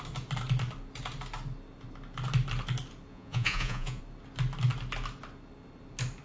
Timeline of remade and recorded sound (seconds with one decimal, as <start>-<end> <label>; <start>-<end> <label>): 0.0-3.1 recorded; 3.1-4.0 remade; 4.0-6.2 recorded